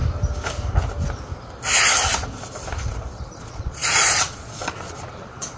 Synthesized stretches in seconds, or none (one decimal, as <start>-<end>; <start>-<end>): 3.4-5.6

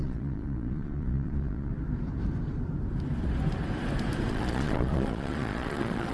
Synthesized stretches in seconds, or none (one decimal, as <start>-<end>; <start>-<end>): 0.0-1.7; 4.3-6.1